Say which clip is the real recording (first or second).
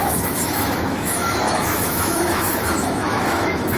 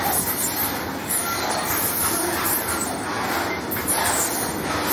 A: second